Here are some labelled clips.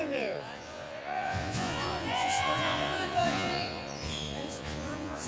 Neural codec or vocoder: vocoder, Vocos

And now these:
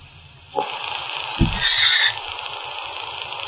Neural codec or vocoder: none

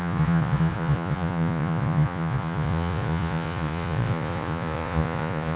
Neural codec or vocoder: vocoder, Vocos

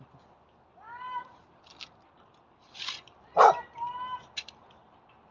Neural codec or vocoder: none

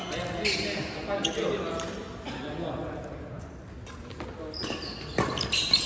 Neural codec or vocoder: none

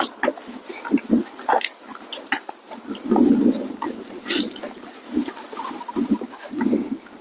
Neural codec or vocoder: none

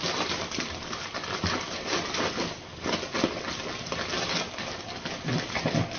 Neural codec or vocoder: none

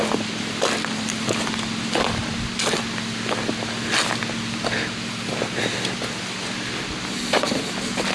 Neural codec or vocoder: none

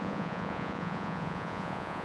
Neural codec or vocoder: vocoder, Vocos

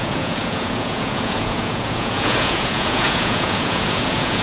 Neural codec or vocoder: vocoder, Vocos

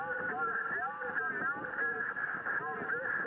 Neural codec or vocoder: none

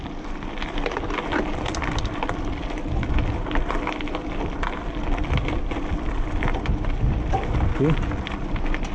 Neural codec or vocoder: none